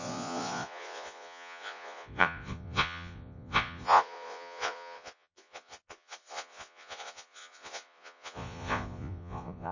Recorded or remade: remade